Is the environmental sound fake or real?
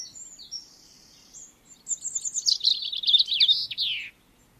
real